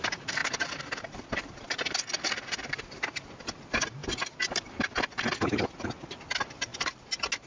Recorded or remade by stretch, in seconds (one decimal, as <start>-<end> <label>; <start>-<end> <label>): 0.0-7.5 recorded